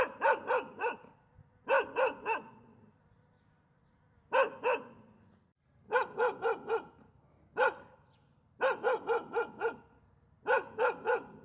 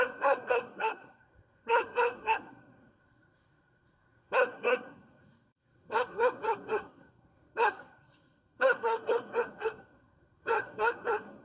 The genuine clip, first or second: first